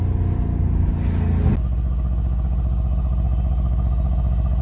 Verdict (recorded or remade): recorded